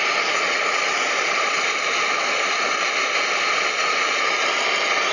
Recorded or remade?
recorded